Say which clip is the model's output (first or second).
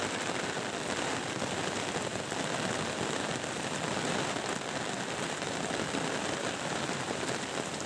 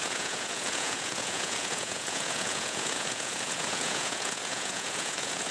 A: second